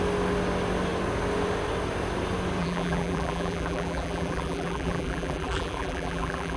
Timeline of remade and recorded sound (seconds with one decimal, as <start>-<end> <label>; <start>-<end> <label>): 0.0-2.6 recorded; 2.6-6.6 remade